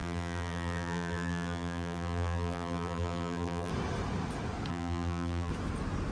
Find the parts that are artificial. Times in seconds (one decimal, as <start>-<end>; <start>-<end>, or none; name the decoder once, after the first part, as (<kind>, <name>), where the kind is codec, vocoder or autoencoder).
0.0-3.7 (vocoder, BigVGAN v2); 4.7-5.5